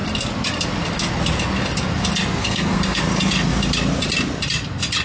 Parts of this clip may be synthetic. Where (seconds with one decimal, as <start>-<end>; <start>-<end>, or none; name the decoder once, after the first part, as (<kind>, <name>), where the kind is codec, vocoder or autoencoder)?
2.4-3.0 (codec, SNAC)